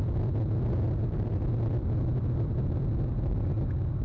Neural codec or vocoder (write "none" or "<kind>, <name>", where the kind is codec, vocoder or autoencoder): none